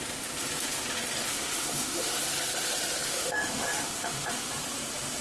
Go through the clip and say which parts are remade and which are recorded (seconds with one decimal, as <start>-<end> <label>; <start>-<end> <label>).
0.0-1.3 recorded; 1.3-2.2 remade; 2.2-3.1 recorded; 3.1-4.5 remade; 4.5-5.2 recorded